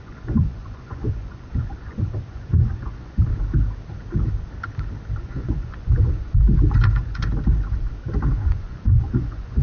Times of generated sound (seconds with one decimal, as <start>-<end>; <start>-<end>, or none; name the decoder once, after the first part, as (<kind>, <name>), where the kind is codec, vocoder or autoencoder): 0.0-3.3 (vocoder, Vocos); 5.2-7.3; 8.3-9.6